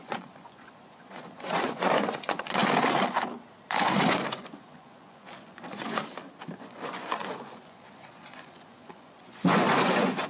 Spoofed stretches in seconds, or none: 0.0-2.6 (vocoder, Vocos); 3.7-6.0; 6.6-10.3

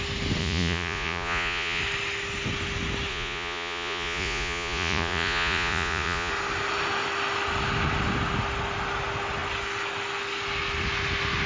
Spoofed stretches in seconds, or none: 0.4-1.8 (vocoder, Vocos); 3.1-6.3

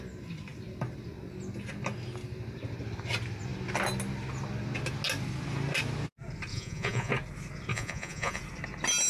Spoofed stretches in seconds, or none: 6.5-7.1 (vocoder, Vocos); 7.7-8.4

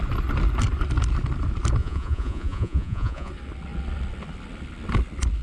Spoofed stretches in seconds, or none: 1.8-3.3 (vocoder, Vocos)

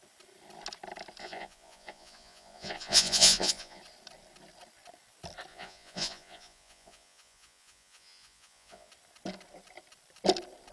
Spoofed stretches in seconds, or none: 1.2-3.8 (vocoder, Vocos); 5.5-8.9